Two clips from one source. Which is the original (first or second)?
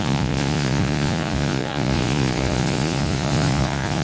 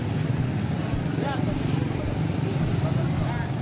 second